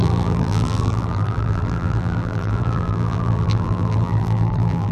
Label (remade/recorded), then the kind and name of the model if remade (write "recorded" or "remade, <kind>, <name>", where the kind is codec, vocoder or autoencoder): remade, vocoder, BigVGAN v2